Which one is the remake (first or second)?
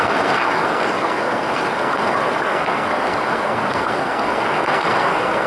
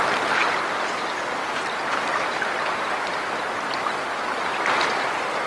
first